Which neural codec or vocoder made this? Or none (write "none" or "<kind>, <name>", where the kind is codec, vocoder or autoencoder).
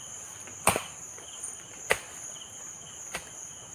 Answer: vocoder, BigVGAN v2